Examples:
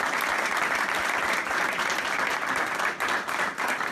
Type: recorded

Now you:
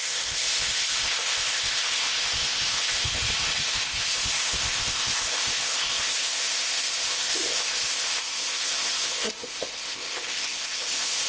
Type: remade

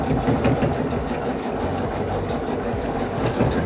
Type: remade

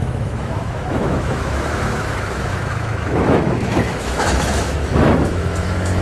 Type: remade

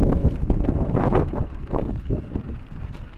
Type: remade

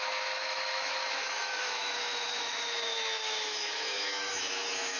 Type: remade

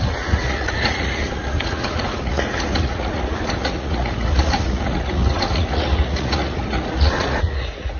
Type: remade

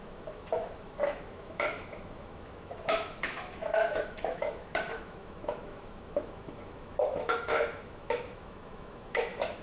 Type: remade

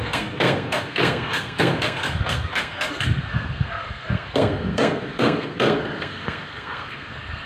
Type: remade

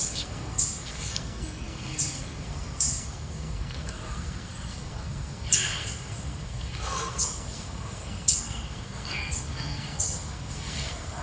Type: remade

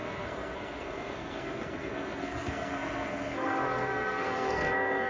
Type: remade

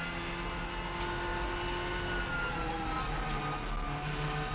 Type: recorded